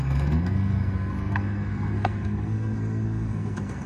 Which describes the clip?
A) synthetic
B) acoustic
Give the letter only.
A